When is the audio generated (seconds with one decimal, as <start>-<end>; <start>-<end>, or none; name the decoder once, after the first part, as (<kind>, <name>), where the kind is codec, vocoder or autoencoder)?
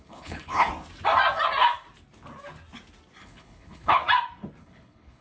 0.0-0.7 (codec, HILCodec); 3.2-4.0; 4.6-5.2